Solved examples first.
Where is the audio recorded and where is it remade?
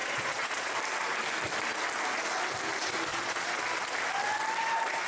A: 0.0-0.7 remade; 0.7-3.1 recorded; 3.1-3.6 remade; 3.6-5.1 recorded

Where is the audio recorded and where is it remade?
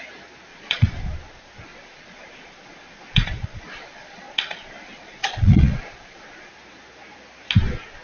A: 0.0-0.5 recorded; 0.5-1.0 remade; 1.0-1.7 recorded; 1.7-6.5 remade; 6.5-8.0 recorded